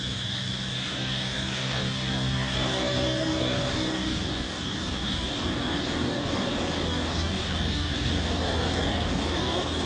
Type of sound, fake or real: fake